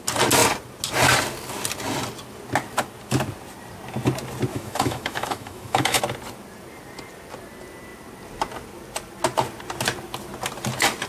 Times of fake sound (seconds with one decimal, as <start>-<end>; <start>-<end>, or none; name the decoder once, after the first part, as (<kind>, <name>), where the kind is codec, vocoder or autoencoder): 4.5-6.0 (autoencoder, DAC-VAE)